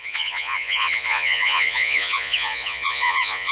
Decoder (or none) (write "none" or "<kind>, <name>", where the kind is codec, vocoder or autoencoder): vocoder, Vocos